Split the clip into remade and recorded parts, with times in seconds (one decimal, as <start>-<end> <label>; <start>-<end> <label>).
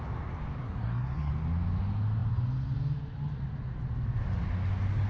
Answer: 0.0-0.6 recorded; 0.6-1.3 remade; 1.3-5.1 recorded